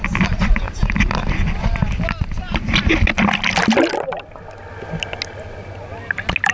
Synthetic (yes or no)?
no